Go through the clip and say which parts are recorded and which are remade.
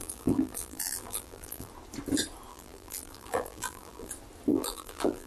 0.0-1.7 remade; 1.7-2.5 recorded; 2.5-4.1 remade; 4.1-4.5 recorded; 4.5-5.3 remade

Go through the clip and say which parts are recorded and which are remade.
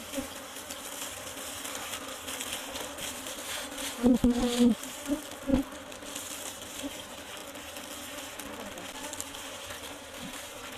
0.0-4.1 remade; 4.1-4.7 recorded; 4.7-7.4 remade; 7.4-10.2 recorded; 10.2-10.8 remade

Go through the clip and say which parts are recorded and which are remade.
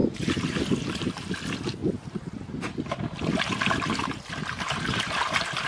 0.0-1.1 remade; 1.1-1.8 recorded; 1.8-5.2 remade; 5.2-5.7 recorded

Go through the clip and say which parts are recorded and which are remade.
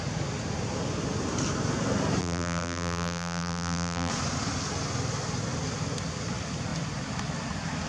0.0-2.2 recorded; 2.2-4.1 remade; 4.1-7.9 recorded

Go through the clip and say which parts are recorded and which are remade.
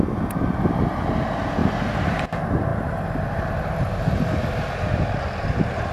0.0-1.6 recorded; 1.6-2.2 remade; 2.2-5.9 recorded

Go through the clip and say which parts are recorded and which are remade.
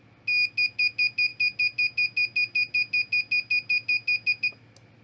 0.0-5.0 recorded